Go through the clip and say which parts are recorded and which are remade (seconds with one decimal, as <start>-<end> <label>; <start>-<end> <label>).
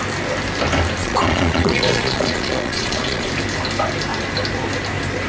0.0-1.0 recorded; 1.0-3.3 remade; 3.3-5.3 recorded